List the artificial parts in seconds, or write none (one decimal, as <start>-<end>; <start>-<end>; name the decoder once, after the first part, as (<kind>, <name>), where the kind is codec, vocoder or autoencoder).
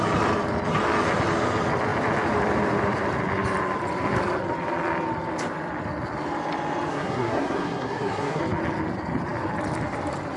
6.9-8.4 (codec, SNAC)